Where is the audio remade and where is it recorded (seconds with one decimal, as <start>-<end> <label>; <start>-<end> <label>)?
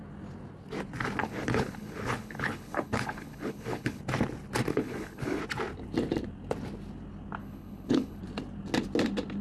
0.0-1.2 recorded; 1.2-4.0 remade; 4.0-4.7 recorded; 4.7-5.4 remade; 5.4-7.4 recorded; 7.4-8.2 remade; 8.2-9.4 recorded